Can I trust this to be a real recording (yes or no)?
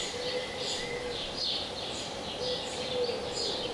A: yes